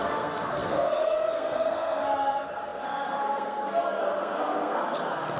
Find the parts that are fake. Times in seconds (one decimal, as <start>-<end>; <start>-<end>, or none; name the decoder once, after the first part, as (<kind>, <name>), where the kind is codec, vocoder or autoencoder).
0.0-5.4 (codec, SNAC)